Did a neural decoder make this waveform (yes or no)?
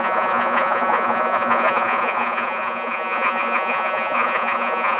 yes